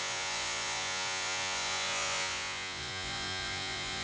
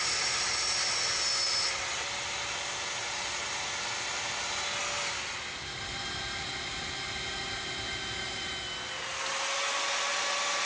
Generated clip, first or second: first